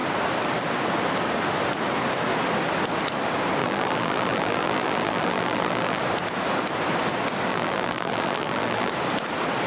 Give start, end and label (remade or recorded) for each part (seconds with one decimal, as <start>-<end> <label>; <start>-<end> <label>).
0.0-3.6 recorded; 3.6-6.0 remade; 6.0-7.5 recorded; 7.5-8.9 remade; 8.9-9.7 recorded